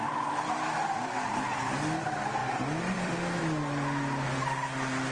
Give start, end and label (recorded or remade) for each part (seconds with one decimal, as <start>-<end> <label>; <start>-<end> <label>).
0.0-5.1 recorded